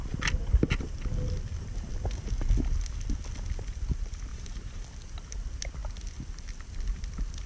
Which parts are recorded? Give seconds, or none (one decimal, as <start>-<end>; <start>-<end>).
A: 0.0-4.3; 4.8-7.5